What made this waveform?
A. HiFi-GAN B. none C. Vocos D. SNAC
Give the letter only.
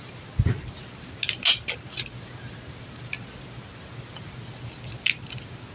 B